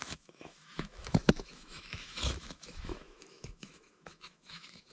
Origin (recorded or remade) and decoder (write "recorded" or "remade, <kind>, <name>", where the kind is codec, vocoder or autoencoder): remade, autoencoder, DAC-VAE